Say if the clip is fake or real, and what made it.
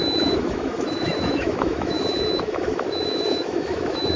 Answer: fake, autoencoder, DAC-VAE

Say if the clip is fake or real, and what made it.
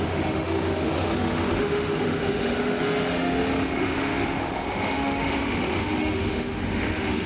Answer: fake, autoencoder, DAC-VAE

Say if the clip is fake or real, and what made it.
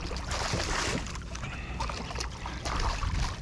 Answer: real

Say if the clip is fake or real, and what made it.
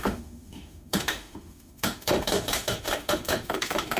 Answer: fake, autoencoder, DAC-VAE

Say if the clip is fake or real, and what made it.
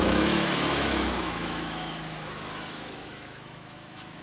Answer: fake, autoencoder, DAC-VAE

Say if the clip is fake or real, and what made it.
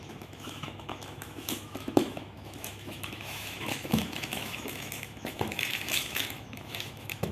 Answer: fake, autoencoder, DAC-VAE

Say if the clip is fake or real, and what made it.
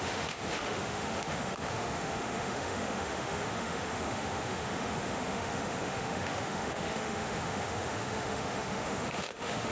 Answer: fake, autoencoder, DAC-VAE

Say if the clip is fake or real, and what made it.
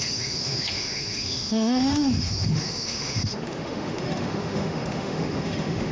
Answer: fake, autoencoder, DAC-VAE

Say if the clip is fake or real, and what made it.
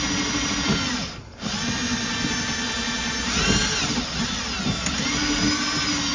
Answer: real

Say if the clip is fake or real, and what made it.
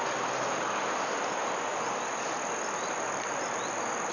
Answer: real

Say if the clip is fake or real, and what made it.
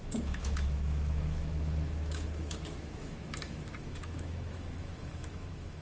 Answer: fake, autoencoder, DAC-VAE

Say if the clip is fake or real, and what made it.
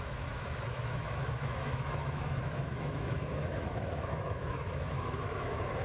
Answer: fake, autoencoder, DAC-VAE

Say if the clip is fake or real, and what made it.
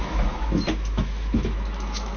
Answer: fake, autoencoder, DAC-VAE